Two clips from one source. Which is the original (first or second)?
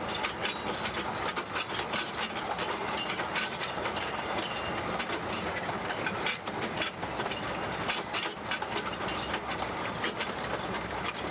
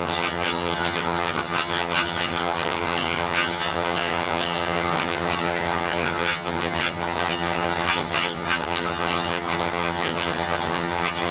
first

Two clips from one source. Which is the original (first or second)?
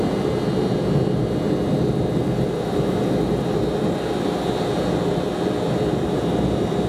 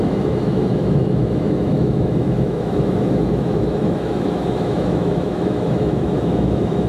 first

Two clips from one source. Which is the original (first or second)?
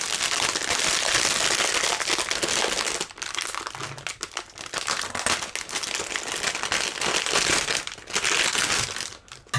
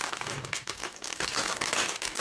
first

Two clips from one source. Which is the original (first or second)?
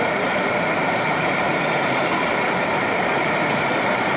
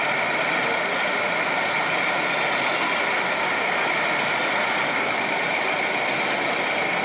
second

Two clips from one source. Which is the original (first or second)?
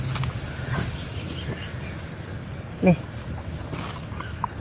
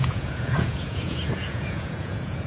first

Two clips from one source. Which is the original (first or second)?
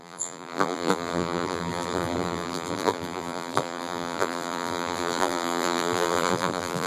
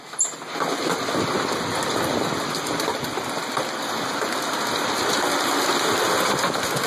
second